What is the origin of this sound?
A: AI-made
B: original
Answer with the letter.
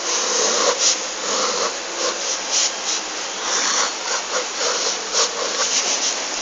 B